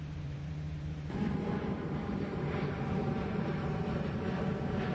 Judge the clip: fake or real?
fake